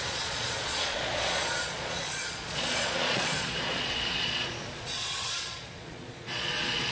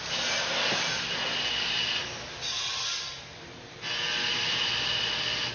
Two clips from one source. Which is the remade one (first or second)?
first